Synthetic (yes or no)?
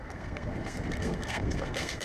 yes